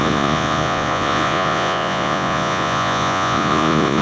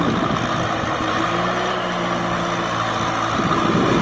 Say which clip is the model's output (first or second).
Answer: first